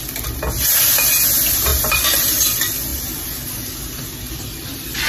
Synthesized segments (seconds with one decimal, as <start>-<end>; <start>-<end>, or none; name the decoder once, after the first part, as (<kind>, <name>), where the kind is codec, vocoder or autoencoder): none